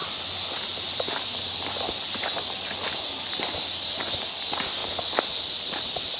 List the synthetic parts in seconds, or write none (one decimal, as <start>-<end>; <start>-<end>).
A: none